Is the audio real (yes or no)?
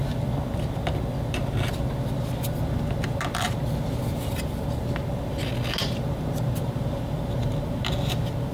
yes